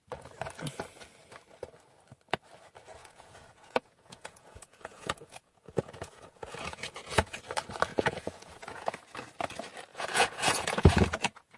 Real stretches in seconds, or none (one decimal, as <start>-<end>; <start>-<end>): 0.0-3.0; 7.4-7.9; 8.9-9.9

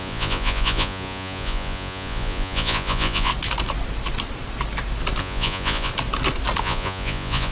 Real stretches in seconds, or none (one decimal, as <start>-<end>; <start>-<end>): 3.3-5.2; 5.9-6.6

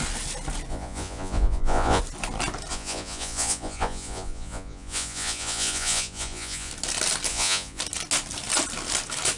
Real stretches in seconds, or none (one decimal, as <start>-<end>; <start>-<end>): 0.0-0.7; 2.0-2.7; 6.7-7.3; 7.8-9.4

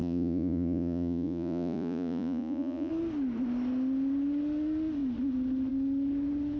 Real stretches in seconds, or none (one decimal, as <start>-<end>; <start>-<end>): 2.9-6.6

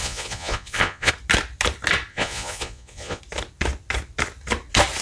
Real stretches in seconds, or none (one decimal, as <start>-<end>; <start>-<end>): 1.1-2.1; 3.2-5.0